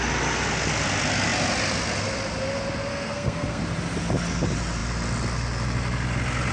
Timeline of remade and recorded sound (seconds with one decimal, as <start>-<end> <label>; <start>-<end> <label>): 0.0-2.9 recorded; 2.9-3.6 remade; 3.6-6.5 recorded